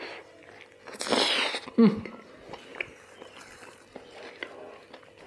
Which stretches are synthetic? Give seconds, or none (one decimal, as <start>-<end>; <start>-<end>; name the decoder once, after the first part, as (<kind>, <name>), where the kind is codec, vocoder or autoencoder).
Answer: none